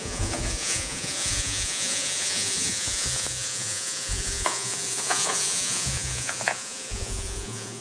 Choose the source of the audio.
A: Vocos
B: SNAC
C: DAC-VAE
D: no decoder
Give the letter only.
A